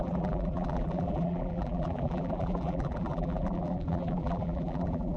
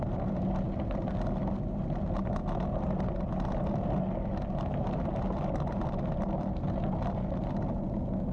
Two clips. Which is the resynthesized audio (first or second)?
first